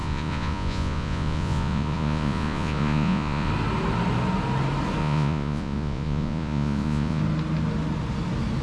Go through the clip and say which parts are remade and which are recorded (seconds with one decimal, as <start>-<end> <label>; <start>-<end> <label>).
0.0-3.5 remade; 3.5-5.0 recorded; 5.0-7.2 remade; 7.2-8.6 recorded